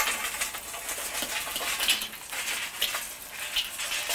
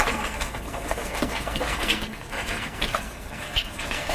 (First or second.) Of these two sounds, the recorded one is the first